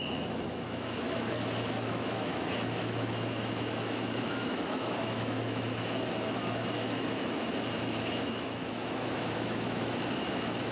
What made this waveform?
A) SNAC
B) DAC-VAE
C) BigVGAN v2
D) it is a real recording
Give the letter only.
B